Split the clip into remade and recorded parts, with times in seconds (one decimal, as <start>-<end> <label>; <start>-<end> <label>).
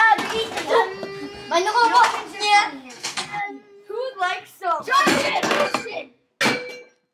0.0-2.8 recorded; 2.8-3.5 remade; 3.5-4.8 recorded; 4.8-6.3 remade; 6.3-7.1 recorded